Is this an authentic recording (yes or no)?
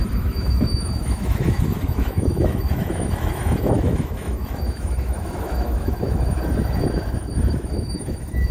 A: no